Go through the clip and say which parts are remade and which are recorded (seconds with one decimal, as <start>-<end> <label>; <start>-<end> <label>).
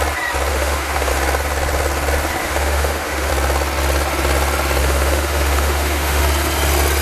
0.0-0.5 recorded; 0.5-1.1 remade; 1.1-2.4 recorded; 2.4-3.3 remade; 3.3-4.8 recorded; 4.8-6.2 remade; 6.2-7.0 recorded